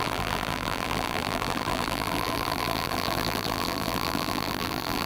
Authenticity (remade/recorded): remade